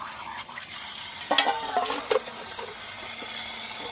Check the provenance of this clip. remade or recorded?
recorded